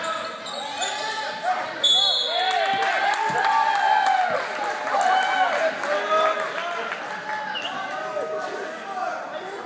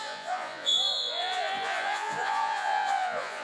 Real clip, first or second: first